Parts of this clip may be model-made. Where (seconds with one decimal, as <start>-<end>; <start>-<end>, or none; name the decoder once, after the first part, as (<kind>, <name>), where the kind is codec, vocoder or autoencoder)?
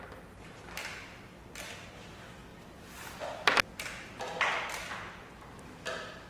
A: 2.5-3.2 (vocoder, BigVGAN v2)